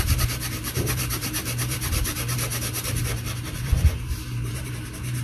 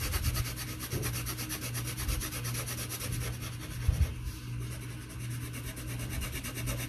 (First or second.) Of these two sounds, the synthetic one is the first